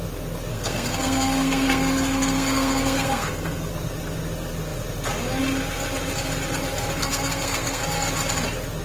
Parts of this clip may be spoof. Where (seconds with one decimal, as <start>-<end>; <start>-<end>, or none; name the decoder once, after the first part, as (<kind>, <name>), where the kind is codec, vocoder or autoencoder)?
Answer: 0.5-3.7 (codec, SNAC); 7.0-7.8